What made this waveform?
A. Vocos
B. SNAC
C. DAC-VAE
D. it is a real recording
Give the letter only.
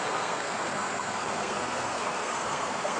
B